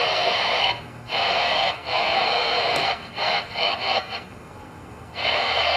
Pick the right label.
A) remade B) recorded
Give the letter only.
A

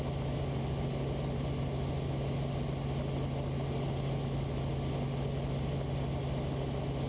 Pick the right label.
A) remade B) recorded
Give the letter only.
B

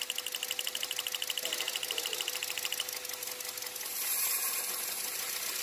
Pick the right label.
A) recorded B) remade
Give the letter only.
A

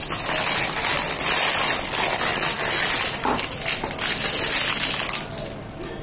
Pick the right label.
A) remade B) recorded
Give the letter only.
B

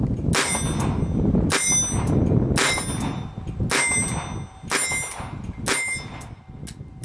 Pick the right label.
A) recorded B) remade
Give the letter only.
A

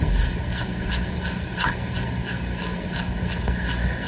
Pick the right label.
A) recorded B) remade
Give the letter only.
B